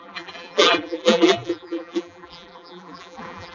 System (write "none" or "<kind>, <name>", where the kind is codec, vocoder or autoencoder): vocoder, BigVGAN v2